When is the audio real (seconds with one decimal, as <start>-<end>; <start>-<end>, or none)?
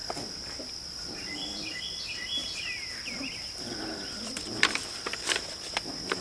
1.8-2.4; 5.4-6.2